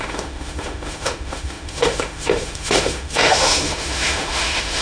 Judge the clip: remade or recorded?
remade